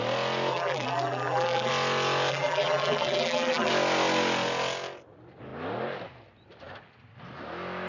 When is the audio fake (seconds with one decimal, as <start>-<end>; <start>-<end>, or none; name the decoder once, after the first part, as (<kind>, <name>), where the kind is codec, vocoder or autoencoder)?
0.5-1.7 (vocoder, BigVGAN v2); 2.3-3.7